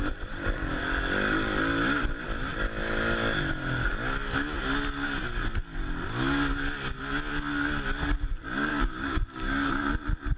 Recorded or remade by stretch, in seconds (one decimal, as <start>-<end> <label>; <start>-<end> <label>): 0.0-8.7 recorded; 8.7-9.7 remade; 9.7-10.4 recorded

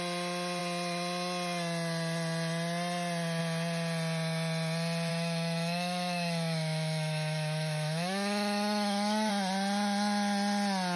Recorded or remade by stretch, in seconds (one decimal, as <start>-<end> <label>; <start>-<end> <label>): 0.0-5.1 recorded; 5.1-9.3 remade; 9.3-11.0 recorded

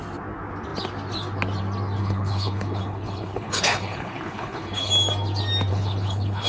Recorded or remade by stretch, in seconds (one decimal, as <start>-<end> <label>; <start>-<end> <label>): 0.0-2.0 recorded; 2.0-4.9 remade; 4.9-5.7 recorded; 5.7-6.5 remade

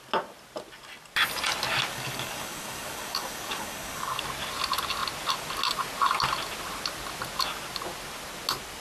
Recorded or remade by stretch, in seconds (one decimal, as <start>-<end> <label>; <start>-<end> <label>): 0.0-1.9 recorded; 1.9-4.2 remade; 4.2-8.8 recorded

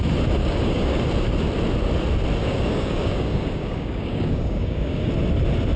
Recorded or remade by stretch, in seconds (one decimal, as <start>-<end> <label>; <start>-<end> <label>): 0.0-0.4 recorded; 0.4-1.0 remade; 1.0-2.4 recorded; 2.4-5.1 remade; 5.1-5.8 recorded

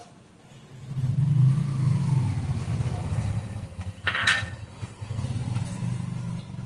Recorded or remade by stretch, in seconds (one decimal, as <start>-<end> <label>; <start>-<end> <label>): 0.0-3.0 recorded; 3.0-5.2 remade; 5.2-6.7 recorded

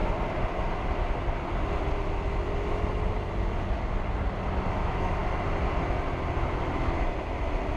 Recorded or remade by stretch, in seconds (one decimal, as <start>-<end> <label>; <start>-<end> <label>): 0.0-4.7 recorded; 4.7-5.2 remade; 5.2-7.8 recorded